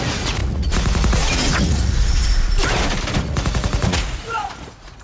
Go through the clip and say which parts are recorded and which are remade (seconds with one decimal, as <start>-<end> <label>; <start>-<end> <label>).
0.0-2.2 remade; 2.2-3.2 recorded; 3.2-5.0 remade